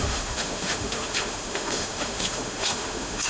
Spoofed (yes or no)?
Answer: yes